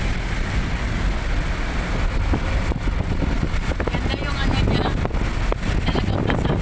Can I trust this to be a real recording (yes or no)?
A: yes